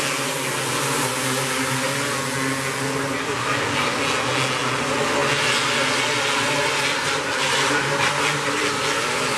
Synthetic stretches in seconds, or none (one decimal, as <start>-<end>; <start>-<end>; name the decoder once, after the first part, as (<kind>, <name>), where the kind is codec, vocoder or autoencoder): none